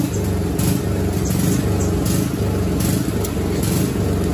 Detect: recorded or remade recorded